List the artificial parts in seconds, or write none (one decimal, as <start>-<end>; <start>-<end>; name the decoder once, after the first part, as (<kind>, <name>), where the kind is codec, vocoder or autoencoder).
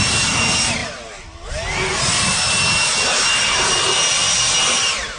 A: none